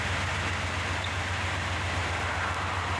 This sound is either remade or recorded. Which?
recorded